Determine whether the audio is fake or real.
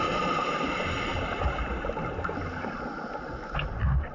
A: real